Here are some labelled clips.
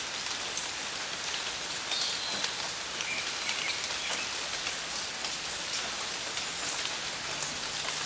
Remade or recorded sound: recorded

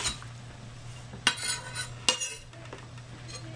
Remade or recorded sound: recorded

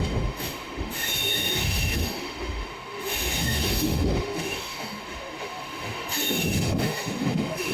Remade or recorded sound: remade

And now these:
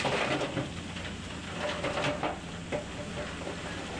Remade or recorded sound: recorded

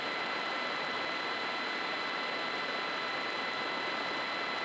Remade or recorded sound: recorded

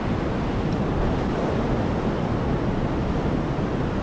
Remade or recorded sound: recorded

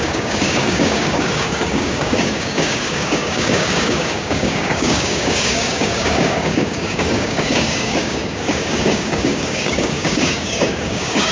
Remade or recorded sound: remade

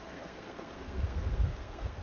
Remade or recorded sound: remade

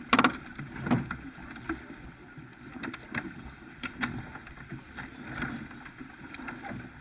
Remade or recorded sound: recorded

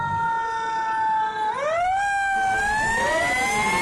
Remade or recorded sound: recorded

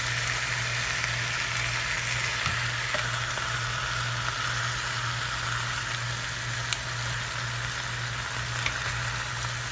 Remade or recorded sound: recorded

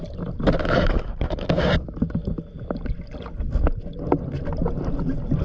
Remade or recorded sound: recorded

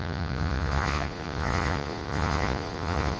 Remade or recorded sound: remade